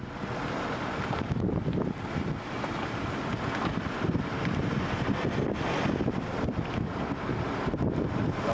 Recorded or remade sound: recorded